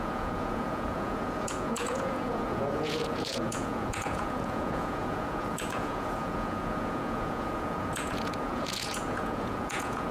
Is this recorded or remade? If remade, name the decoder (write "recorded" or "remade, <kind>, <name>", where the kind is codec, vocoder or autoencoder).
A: remade, vocoder, Vocos